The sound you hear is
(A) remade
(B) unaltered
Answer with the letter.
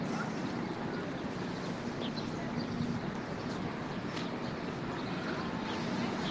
B